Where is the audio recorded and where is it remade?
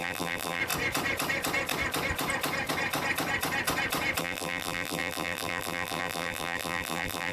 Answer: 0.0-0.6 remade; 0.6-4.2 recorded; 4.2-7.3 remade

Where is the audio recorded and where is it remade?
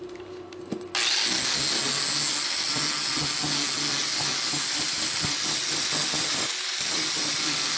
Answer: 0.0-4.0 recorded; 4.0-7.8 remade